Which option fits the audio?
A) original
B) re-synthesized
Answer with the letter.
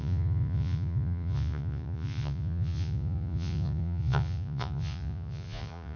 B